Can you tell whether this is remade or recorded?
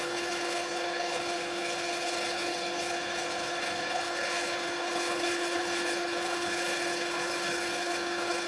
remade